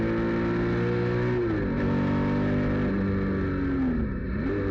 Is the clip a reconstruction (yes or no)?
no